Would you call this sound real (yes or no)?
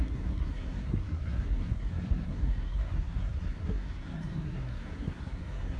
no